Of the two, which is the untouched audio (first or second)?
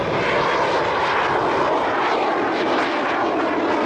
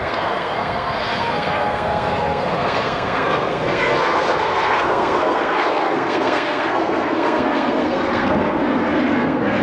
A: first